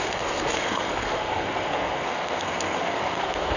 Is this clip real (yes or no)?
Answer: no